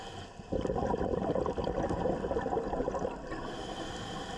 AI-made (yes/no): no